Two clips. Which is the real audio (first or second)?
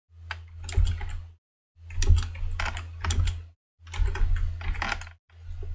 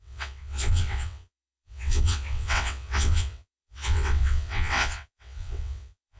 first